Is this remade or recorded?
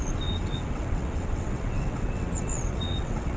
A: remade